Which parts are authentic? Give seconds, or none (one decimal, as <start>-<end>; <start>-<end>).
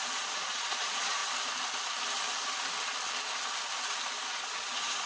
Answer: 1.2-4.3